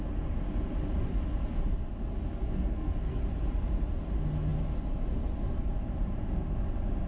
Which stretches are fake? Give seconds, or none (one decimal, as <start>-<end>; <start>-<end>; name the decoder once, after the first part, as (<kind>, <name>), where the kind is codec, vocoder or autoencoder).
2.4-3.2 (codec, SNAC)